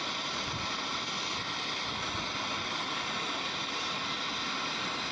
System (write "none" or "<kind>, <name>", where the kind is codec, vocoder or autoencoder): none